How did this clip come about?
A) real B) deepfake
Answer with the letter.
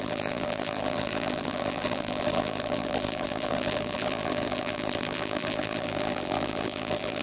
B